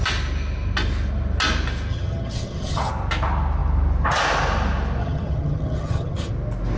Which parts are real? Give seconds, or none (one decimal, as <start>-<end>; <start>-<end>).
0.0-1.9; 2.9-5.0; 6.3-6.8